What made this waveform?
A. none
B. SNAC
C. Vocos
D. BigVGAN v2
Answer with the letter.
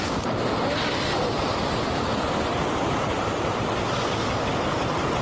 A